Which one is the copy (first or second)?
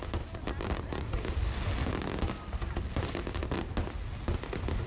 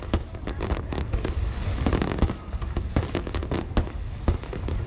second